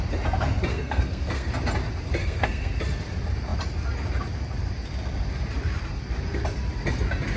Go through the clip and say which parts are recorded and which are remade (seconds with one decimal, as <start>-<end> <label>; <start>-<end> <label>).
0.0-0.7 recorded; 0.7-1.5 remade; 1.5-2.2 recorded; 2.2-2.8 remade; 2.8-7.4 recorded